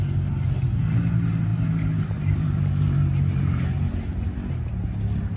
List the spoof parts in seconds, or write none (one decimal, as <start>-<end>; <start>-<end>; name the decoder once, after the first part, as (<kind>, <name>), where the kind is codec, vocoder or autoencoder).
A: 1.5-3.9 (vocoder, BigVGAN v2)